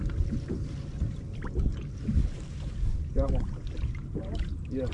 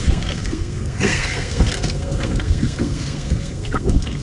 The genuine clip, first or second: first